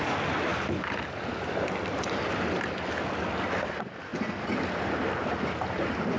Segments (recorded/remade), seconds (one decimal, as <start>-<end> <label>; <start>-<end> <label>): 0.0-6.2 recorded